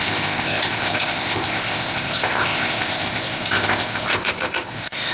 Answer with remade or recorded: remade